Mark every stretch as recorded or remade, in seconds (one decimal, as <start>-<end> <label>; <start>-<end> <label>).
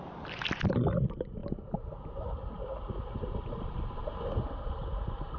0.0-1.4 remade; 1.4-4.6 recorded; 4.6-5.4 remade